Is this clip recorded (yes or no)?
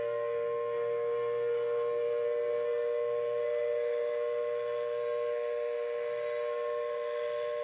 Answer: no